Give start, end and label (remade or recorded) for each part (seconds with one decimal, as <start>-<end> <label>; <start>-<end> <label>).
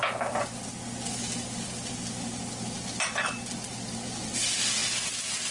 0.0-5.5 recorded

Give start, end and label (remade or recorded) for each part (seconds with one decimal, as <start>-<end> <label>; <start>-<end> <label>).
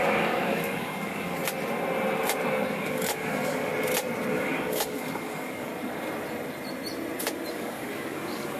0.0-1.4 remade; 1.4-2.7 recorded; 2.7-3.7 remade; 3.7-4.3 recorded; 4.3-5.7 remade; 5.7-7.5 recorded; 7.5-8.6 remade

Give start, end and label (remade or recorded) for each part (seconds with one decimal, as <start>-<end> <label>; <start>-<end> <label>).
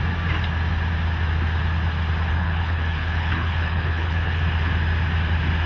0.0-2.3 recorded; 2.3-4.4 remade; 4.4-5.7 recorded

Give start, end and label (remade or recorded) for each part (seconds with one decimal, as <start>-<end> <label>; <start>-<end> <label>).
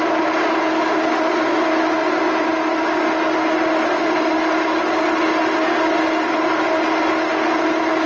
0.0-8.1 recorded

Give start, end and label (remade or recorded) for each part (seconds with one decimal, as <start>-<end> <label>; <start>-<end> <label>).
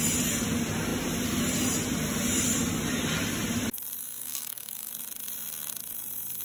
0.0-4.0 recorded; 4.0-4.9 remade; 4.9-6.4 recorded